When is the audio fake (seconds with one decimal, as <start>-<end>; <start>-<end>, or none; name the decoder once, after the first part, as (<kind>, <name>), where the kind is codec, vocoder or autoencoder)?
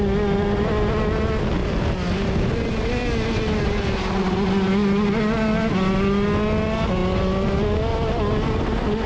none